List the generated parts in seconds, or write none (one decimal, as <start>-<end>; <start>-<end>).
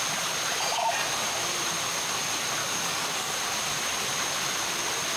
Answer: 2.6-3.3